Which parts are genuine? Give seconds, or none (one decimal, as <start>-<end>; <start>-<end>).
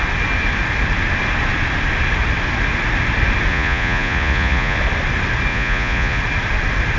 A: 0.0-3.5; 4.8-5.5; 6.2-7.0